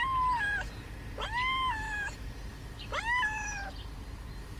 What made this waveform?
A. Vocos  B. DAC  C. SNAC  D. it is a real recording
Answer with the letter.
D